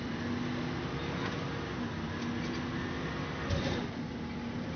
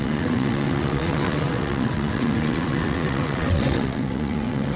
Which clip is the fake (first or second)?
second